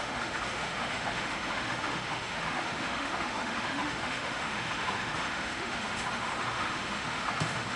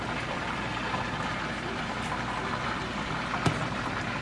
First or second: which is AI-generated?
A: first